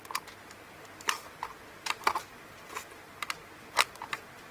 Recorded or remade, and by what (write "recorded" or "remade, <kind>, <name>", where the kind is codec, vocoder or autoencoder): recorded